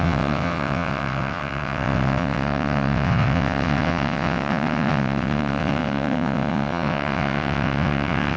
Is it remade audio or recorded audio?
remade